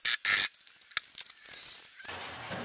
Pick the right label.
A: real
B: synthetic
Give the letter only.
A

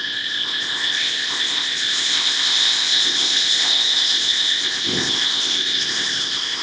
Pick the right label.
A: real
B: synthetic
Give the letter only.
B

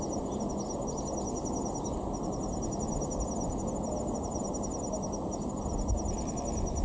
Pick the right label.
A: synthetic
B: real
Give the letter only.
B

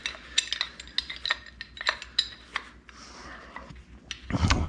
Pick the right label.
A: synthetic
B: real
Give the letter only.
B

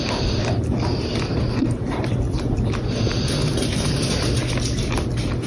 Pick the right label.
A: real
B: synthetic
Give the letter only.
A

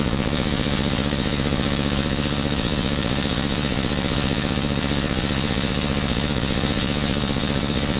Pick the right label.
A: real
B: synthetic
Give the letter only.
B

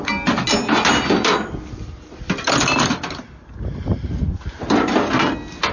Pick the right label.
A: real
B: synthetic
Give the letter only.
A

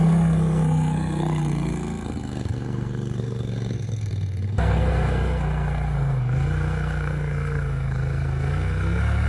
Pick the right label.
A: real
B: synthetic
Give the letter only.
B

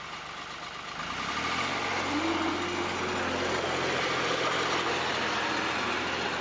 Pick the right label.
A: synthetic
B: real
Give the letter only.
B